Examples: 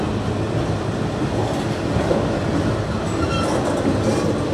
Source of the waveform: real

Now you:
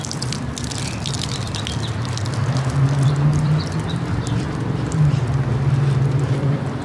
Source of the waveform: fake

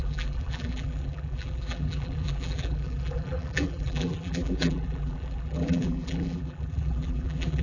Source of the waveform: fake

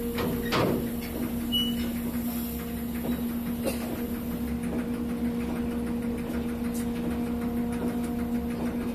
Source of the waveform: real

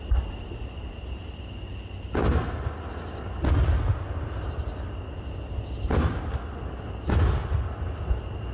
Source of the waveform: real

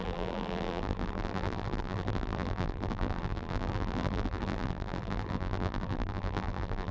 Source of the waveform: fake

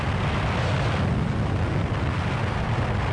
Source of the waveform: real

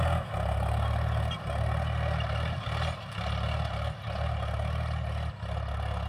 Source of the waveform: real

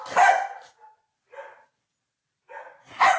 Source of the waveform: real